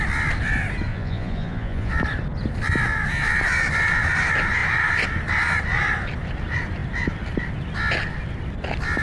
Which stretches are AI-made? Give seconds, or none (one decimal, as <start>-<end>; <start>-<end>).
0.9-1.9